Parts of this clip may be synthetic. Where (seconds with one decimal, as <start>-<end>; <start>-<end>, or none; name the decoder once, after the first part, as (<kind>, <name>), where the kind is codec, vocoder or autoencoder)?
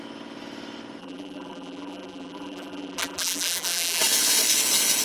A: 1.0-4.0 (vocoder, BigVGAN v2)